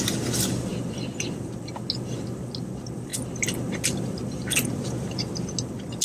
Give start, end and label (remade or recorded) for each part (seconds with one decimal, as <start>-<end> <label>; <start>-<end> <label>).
0.0-6.0 recorded